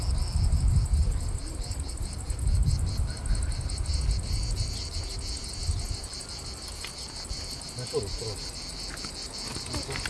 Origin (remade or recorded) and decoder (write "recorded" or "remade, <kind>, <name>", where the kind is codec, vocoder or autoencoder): recorded